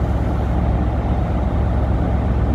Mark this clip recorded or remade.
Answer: recorded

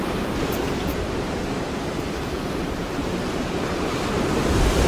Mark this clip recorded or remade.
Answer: remade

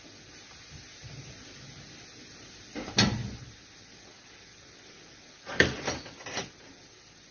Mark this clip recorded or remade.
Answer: recorded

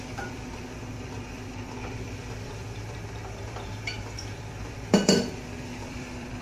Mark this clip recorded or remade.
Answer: remade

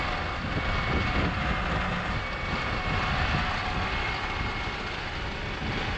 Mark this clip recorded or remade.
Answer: recorded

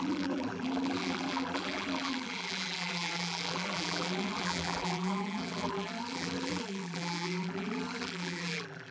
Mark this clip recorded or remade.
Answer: remade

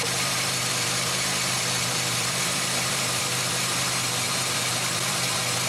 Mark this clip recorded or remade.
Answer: remade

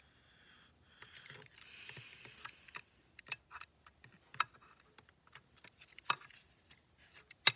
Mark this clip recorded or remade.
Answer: recorded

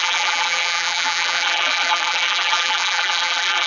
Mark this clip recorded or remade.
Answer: remade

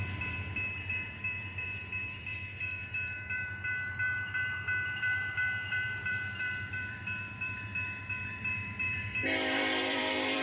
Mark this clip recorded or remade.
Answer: remade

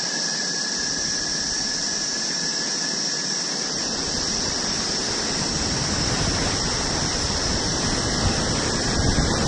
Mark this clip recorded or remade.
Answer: remade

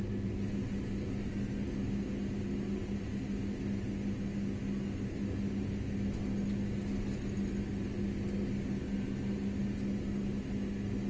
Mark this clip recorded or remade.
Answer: recorded